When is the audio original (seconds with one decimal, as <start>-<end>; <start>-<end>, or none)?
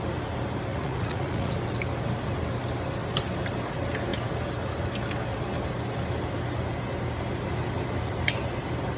0.0-0.7; 1.5-9.0